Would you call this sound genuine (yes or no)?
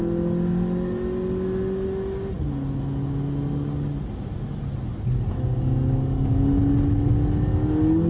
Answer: yes